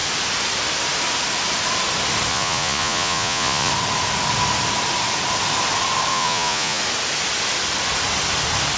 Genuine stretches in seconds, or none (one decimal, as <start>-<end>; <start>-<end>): 0.0-2.3; 3.7-6.1; 6.8-8.8